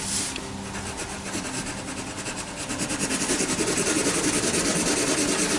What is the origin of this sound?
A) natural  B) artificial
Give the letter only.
A